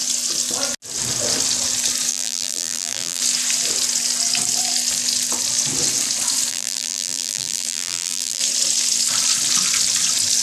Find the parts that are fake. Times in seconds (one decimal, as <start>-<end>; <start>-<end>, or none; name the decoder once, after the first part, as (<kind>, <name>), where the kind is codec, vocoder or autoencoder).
2.1-3.2 (vocoder, BigVGAN v2); 6.5-8.4